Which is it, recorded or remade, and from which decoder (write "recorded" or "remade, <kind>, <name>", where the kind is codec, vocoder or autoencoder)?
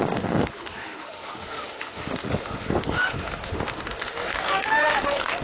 remade, autoencoder, DAC-VAE